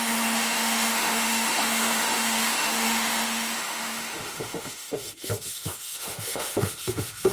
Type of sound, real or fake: fake